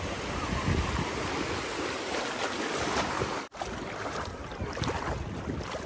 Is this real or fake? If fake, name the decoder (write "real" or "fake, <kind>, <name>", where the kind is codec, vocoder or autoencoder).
real